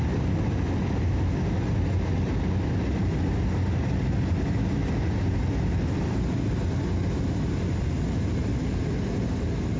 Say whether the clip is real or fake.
real